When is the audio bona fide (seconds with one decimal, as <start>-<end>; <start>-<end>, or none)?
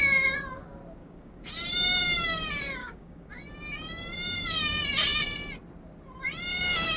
0.0-1.0; 1.5-2.8; 3.3-6.5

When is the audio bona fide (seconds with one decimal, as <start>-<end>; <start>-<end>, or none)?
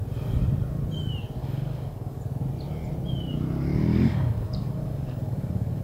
0.0-1.4; 2.2-3.9